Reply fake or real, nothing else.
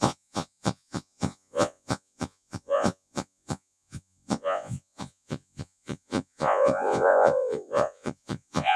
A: fake